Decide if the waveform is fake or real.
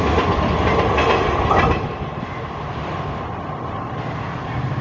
real